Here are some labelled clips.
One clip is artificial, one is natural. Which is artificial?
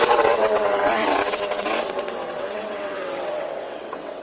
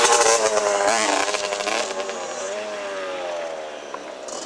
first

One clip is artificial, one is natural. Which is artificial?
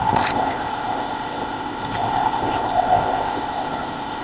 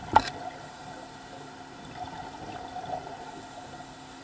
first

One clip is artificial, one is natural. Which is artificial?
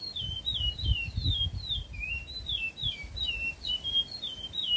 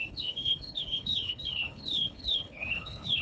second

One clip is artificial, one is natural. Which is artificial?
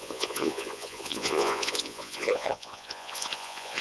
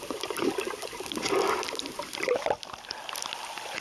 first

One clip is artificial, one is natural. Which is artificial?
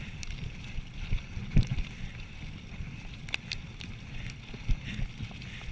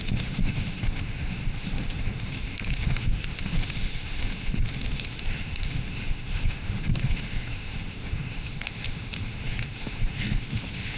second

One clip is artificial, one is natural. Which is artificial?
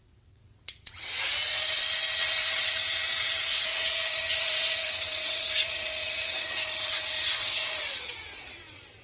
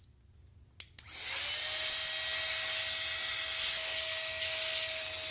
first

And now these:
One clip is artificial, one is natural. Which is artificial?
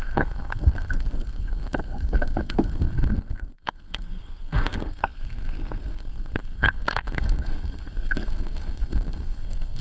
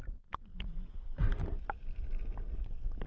first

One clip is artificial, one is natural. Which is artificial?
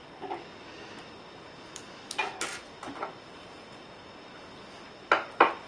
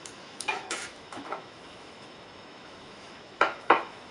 second